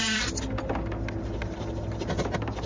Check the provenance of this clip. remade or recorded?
recorded